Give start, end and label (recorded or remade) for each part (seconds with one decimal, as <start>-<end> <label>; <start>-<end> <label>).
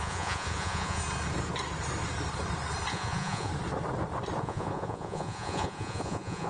0.0-1.0 remade; 1.0-2.9 recorded; 2.9-3.5 remade; 3.5-4.4 recorded; 4.4-6.5 remade